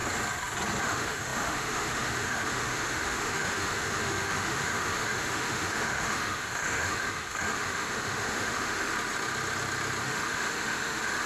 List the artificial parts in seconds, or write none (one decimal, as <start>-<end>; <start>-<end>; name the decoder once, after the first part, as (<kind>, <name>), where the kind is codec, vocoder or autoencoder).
0.8-8.9 (autoencoder, DAC-VAE); 10.0-11.3